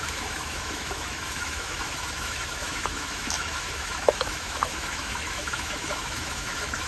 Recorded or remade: remade